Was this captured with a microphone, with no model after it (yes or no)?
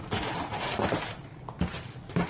yes